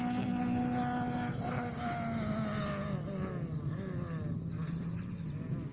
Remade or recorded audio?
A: recorded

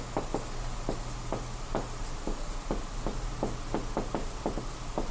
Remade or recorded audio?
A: recorded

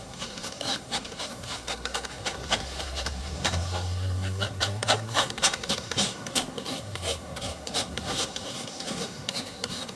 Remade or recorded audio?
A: remade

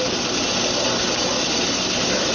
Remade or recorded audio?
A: recorded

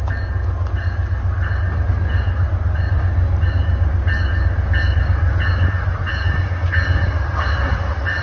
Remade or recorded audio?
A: recorded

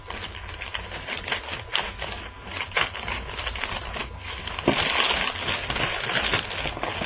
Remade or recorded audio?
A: recorded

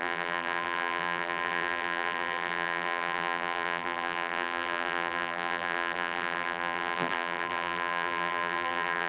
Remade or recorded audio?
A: remade